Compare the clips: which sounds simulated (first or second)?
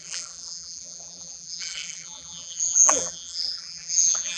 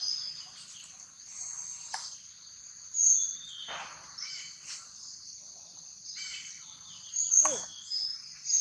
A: first